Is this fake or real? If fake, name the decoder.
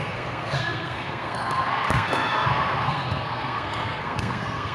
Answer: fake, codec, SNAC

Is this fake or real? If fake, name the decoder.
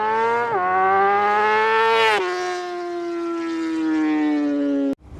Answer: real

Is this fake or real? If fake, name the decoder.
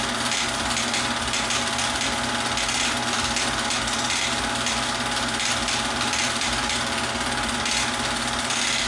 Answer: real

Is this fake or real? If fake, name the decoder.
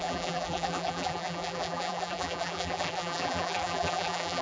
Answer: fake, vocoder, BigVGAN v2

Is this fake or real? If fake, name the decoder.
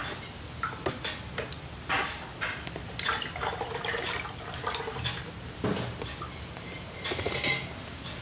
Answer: real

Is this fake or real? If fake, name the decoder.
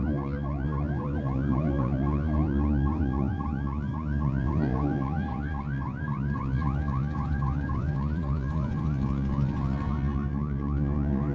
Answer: fake, vocoder, Vocos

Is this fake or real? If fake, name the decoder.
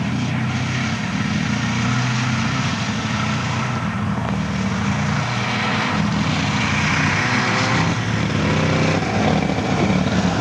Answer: real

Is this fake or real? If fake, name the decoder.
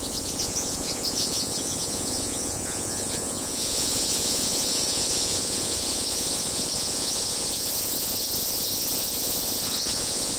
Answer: fake, vocoder, Vocos